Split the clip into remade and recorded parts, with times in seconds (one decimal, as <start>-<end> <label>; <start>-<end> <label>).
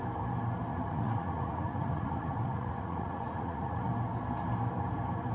0.0-0.7 recorded; 0.7-3.9 remade; 3.9-5.3 recorded